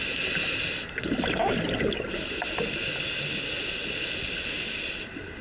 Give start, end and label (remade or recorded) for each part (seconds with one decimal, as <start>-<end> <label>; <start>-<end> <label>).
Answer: 0.0-5.4 recorded